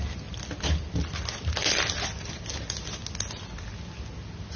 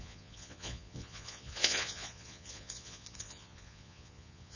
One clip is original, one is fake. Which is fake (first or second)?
second